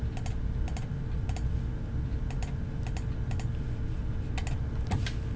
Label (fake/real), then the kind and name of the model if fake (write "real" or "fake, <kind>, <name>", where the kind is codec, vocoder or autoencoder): real